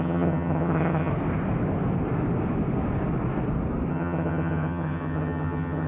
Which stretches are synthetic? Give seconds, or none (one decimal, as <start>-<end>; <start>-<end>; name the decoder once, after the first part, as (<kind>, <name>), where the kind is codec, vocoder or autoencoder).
0.0-1.1 (vocoder, HiFi-GAN); 3.9-5.9